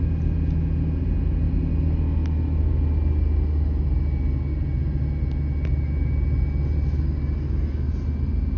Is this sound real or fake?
real